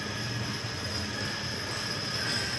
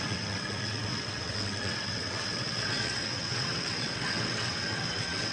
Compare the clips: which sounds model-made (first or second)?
second